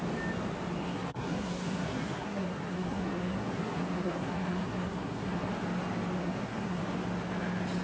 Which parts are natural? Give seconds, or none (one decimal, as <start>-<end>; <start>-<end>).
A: 0.0-0.8; 5.5-6.2; 6.8-7.8